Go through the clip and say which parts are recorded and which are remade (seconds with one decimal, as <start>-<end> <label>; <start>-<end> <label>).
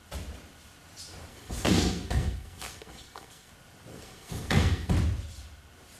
0.0-1.3 recorded; 1.3-3.5 remade; 3.5-3.9 recorded; 3.9-4.9 remade; 4.9-6.0 recorded